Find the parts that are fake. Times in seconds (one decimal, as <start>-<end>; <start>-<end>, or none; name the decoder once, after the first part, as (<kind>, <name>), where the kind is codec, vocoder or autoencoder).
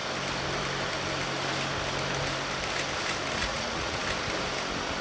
3.4-4.0 (vocoder, Vocos)